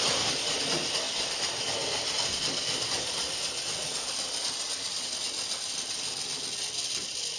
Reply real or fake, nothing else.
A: real